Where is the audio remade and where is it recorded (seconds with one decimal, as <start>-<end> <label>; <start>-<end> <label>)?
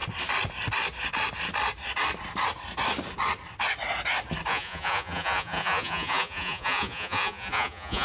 0.0-4.5 recorded; 4.5-8.0 remade